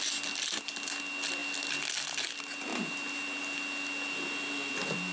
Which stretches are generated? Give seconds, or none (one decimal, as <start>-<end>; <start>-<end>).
none